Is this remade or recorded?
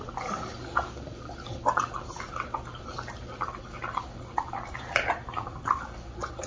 recorded